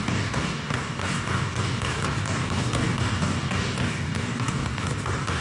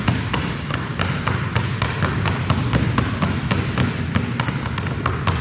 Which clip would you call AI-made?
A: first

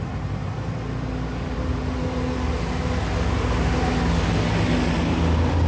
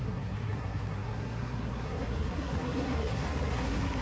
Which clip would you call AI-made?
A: second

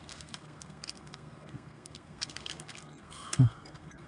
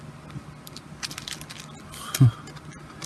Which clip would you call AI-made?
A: first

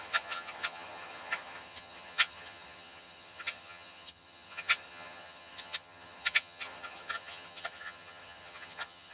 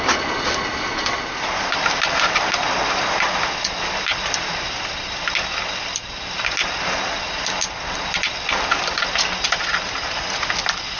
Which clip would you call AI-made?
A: first